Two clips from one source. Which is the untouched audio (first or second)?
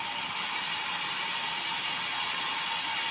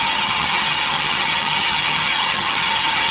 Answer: first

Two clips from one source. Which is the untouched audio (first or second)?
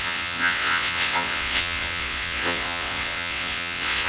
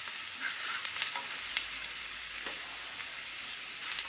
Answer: second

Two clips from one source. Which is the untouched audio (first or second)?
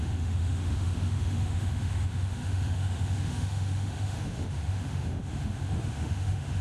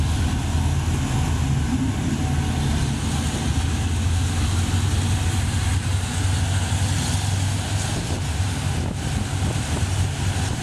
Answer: second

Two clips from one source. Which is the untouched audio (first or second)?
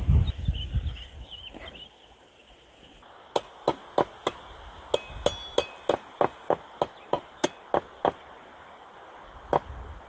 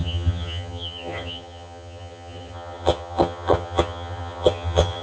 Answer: first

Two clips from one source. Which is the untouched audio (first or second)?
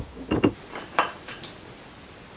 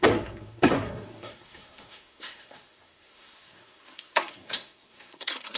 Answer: first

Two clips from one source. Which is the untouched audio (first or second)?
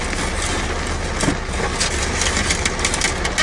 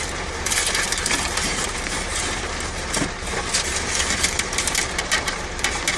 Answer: first